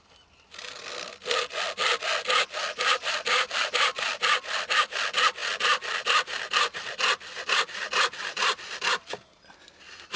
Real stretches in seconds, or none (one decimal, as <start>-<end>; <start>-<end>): 0.0-10.2